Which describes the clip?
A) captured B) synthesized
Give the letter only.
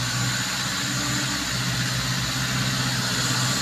A